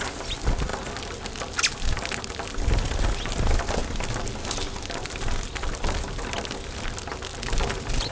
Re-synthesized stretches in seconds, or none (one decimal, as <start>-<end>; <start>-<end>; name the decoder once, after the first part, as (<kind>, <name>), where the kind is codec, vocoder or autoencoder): none